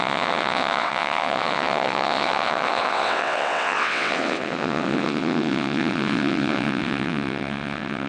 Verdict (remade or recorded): remade